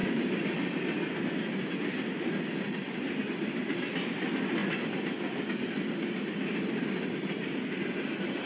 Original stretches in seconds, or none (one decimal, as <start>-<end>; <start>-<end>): 0.0-8.5